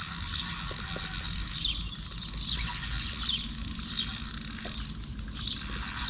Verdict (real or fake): real